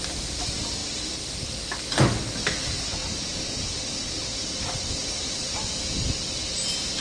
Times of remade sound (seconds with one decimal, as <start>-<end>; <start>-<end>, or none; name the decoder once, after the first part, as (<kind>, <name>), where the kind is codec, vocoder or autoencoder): none